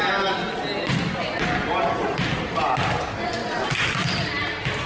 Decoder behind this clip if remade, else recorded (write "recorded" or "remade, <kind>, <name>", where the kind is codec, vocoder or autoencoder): recorded